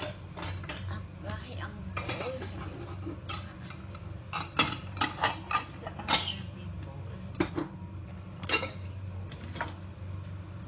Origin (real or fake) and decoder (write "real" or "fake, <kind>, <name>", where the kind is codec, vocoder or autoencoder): real